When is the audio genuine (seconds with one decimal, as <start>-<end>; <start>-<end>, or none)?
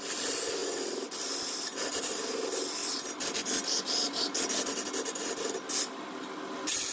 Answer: 0.0-6.9